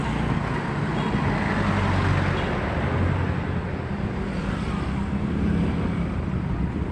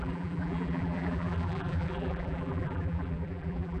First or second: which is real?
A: first